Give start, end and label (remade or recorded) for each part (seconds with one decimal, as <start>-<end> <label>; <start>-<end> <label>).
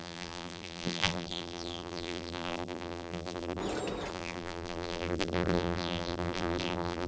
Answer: 0.0-3.6 remade; 3.6-4.1 recorded; 4.1-7.1 remade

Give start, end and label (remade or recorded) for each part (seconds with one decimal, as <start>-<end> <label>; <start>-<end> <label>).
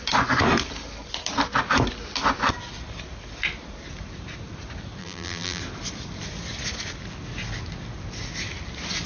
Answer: 0.0-5.0 recorded; 5.0-5.6 remade; 5.6-9.1 recorded